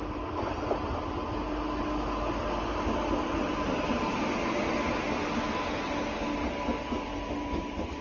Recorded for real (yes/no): yes